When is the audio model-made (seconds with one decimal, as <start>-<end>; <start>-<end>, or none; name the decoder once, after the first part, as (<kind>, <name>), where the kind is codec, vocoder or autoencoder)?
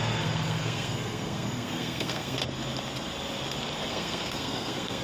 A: 0.0-2.4 (codec, SNAC); 3.9-5.0